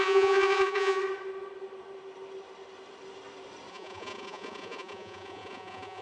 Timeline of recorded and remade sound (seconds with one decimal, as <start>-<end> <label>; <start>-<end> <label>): 0.0-1.0 remade; 1.0-3.7 recorded; 3.7-6.0 remade